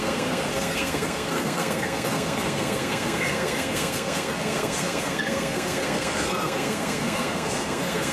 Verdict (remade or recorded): remade